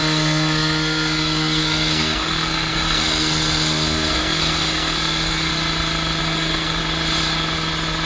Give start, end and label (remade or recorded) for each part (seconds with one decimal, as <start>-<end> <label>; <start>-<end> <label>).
0.0-5.5 remade; 5.5-6.2 recorded; 6.2-6.8 remade; 6.8-8.1 recorded